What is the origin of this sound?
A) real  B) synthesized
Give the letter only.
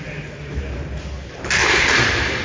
A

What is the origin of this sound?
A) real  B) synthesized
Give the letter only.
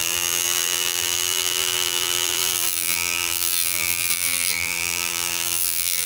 B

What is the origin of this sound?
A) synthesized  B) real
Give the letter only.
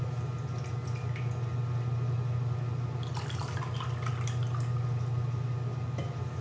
B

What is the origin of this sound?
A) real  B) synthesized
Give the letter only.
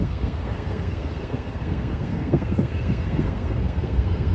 B